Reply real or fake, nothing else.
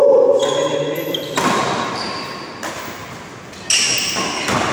real